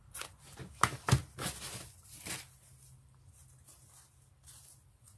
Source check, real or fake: real